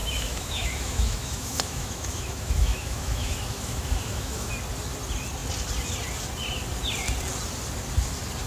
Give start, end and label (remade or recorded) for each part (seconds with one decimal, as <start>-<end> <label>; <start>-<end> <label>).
0.0-4.5 remade; 4.5-8.5 recorded